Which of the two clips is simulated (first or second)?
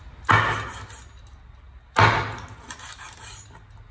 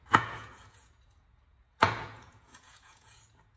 second